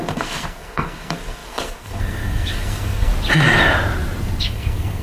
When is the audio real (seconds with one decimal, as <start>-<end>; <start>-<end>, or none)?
3.1-4.4